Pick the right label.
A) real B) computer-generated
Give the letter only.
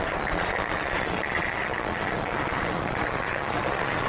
B